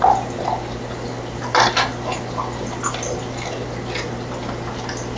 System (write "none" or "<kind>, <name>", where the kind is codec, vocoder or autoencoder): none